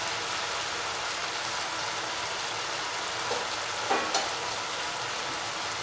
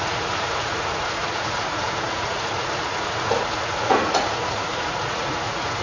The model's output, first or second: second